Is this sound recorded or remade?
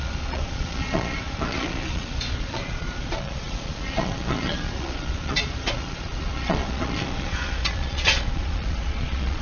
remade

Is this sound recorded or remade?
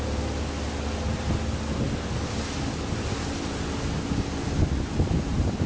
recorded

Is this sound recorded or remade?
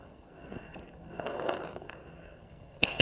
remade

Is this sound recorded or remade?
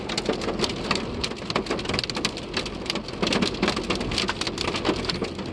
recorded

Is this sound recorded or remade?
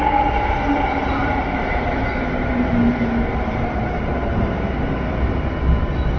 recorded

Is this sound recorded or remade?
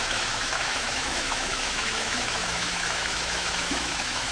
remade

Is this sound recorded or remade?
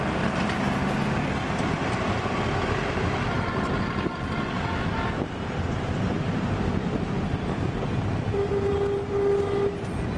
recorded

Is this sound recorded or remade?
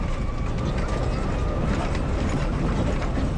recorded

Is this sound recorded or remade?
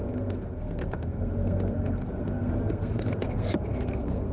remade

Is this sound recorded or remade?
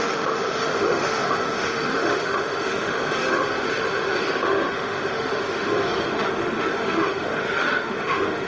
remade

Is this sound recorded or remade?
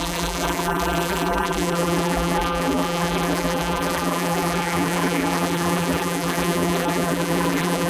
remade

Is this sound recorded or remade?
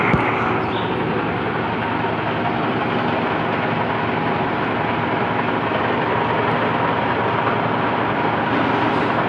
recorded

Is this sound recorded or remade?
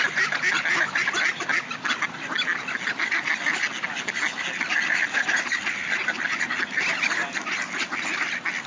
recorded